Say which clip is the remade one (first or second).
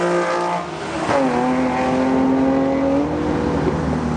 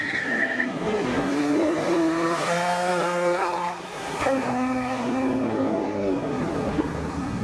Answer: second